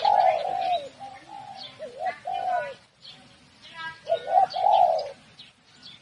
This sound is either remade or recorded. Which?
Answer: recorded